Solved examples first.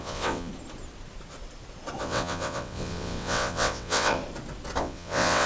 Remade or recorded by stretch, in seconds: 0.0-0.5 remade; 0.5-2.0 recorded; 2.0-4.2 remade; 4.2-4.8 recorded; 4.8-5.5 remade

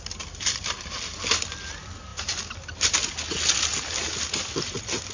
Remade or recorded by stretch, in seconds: 0.0-5.1 recorded

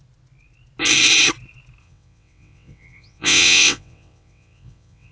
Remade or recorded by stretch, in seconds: 0.0-1.8 recorded; 1.8-5.1 remade

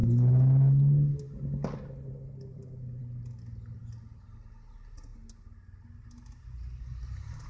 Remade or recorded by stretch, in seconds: 0.0-7.5 recorded

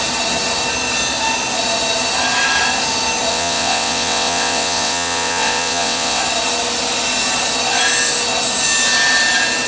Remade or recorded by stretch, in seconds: 0.0-3.3 recorded; 3.3-6.2 remade; 6.2-9.7 recorded

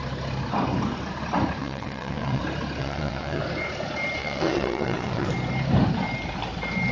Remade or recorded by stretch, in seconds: 0.0-1.6 recorded; 1.6-2.4 remade; 2.4-2.8 recorded; 2.8-3.4 remade; 3.4-4.2 recorded; 4.2-5.3 remade; 5.3-6.9 recorded

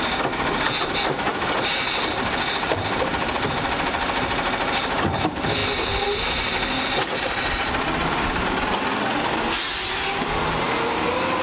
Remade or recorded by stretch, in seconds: 0.0-11.4 recorded